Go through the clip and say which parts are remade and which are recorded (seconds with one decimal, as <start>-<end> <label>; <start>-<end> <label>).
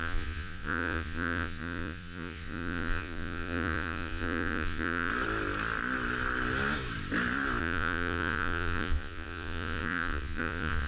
0.0-5.1 remade; 5.1-7.6 recorded; 7.6-10.9 remade